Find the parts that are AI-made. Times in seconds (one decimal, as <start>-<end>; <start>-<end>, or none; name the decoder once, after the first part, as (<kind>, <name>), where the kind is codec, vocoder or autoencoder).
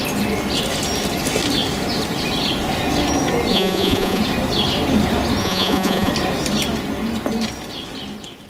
3.5-4.2 (vocoder, Vocos); 5.4-6.1